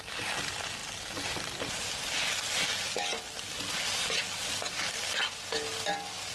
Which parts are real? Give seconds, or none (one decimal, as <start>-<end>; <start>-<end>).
0.8-3.5

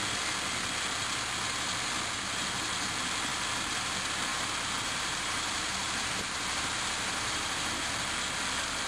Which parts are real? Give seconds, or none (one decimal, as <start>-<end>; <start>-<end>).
0.0-4.3; 7.7-8.9

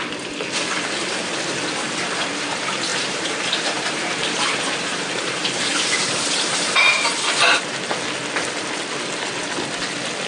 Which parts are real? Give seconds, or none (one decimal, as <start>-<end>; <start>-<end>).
0.0-2.9; 7.8-10.3

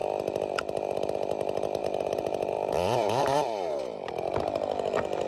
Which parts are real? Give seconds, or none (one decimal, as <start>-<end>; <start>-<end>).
0.0-1.8; 4.1-5.3